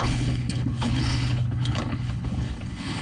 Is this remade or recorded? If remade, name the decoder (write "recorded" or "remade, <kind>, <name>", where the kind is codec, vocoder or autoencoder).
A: remade, codec, HILCodec